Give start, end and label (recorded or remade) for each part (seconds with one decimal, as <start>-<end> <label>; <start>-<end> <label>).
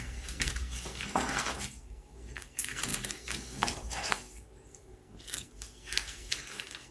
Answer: 0.0-6.9 remade